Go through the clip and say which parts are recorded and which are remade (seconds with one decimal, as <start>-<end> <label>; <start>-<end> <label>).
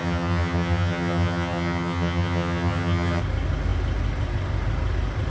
0.0-3.2 remade; 3.2-5.3 recorded